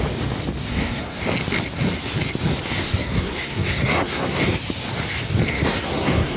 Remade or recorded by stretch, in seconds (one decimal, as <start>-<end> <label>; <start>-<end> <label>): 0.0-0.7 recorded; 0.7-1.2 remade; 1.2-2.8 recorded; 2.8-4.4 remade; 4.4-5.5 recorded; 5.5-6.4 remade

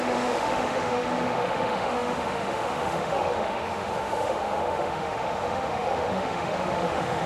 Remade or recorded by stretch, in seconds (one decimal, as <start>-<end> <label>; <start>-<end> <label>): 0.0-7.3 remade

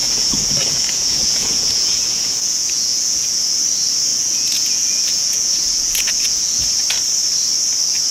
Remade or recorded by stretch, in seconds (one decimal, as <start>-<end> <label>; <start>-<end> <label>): 0.0-3.5 remade; 3.5-4.1 recorded; 4.1-6.6 remade; 6.6-8.1 recorded

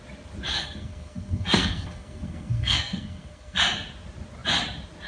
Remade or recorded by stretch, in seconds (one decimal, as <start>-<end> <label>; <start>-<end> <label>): 0.0-0.5 recorded; 0.5-3.6 remade; 3.6-5.1 recorded

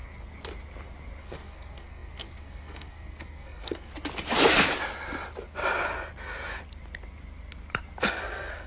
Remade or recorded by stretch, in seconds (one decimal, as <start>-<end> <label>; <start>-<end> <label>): 0.0-1.2 recorded; 1.2-3.9 remade; 3.9-8.0 recorded; 8.0-8.7 remade

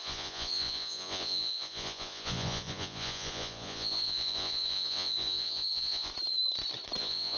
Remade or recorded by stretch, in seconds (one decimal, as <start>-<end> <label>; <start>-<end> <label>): 0.0-6.1 remade; 6.1-7.0 recorded; 7.0-7.4 remade

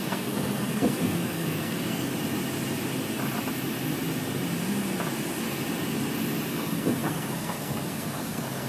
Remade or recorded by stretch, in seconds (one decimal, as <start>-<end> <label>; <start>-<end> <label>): 0.0-2.1 remade; 2.1-6.5 recorded; 6.5-8.7 remade

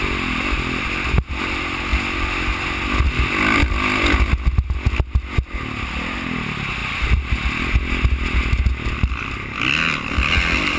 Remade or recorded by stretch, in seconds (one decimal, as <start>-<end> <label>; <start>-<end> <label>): 0.0-10.8 recorded